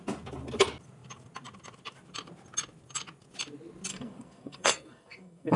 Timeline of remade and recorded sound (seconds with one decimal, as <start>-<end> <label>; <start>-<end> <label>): 0.0-3.9 recorded; 3.9-5.6 remade